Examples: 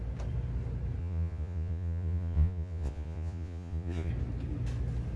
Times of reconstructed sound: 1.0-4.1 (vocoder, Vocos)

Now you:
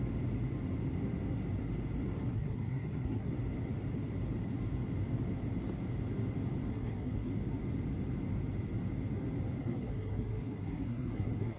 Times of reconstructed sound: 2.3-3.3 (codec, SNAC); 6.7-7.3; 9.6-11.6

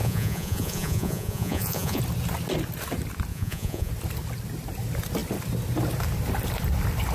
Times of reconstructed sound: 0.0-2.0 (vocoder, Vocos); 3.3-3.9